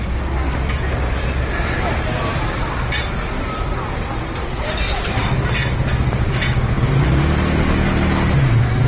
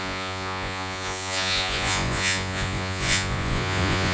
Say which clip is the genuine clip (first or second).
first